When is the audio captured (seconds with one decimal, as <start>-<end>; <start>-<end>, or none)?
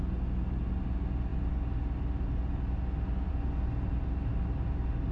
0.0-5.1